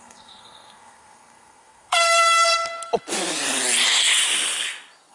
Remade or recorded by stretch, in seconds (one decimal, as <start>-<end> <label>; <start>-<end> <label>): 0.0-2.6 remade; 2.6-5.1 recorded